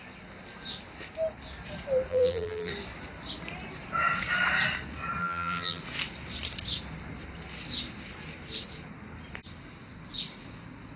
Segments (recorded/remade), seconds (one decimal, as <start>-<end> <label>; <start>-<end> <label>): 0.0-2.1 recorded; 2.1-2.7 remade; 2.7-5.2 recorded; 5.2-5.8 remade; 5.8-11.0 recorded